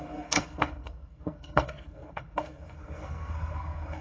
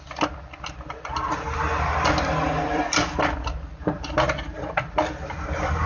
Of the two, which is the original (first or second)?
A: second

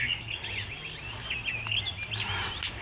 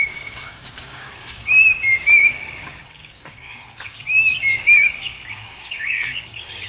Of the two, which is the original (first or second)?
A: first